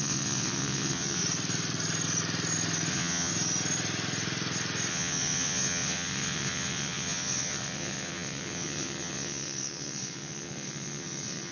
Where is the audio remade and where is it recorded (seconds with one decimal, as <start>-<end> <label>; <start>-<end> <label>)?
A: 0.0-1.2 remade; 1.2-2.9 recorded; 2.9-3.3 remade; 3.3-4.9 recorded; 4.9-11.5 remade